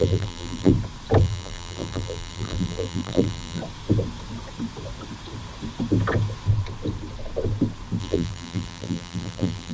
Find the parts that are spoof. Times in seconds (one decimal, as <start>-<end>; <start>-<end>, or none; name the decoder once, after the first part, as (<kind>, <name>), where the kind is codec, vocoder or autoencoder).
0.0-0.7 (vocoder, BigVGAN v2); 1.2-3.6; 8.0-9.7